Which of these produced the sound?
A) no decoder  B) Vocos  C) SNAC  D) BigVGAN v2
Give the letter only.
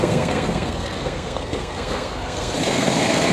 C